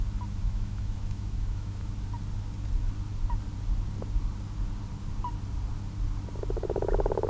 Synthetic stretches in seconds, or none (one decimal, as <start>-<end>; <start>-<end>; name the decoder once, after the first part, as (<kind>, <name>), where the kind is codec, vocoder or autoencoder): 0.4-1.9 (autoencoder, DAC-VAE)